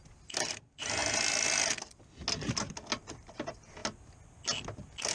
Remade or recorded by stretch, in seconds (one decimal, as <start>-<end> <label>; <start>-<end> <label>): 0.0-5.1 recorded